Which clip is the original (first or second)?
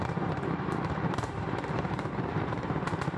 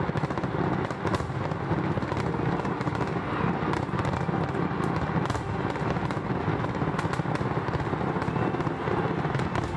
second